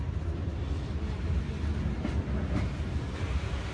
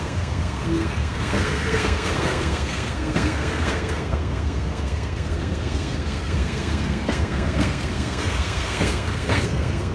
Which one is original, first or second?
first